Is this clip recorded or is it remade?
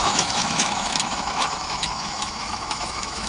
remade